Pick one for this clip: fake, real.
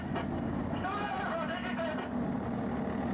real